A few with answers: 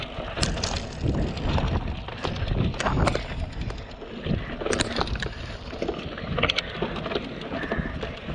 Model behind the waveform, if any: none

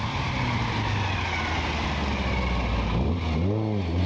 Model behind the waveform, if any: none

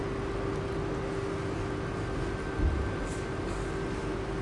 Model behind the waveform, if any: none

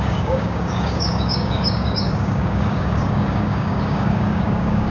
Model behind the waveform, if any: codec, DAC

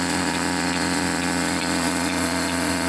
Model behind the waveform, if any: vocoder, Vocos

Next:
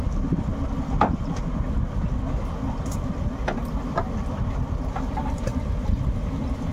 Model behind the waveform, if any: none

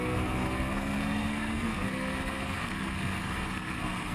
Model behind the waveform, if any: codec, SNAC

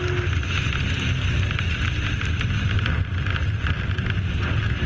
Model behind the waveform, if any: none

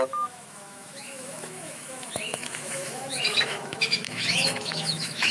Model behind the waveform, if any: autoencoder, DAC-VAE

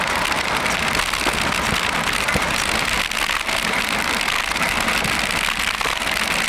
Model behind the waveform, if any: none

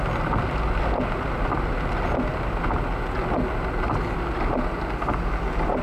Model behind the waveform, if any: none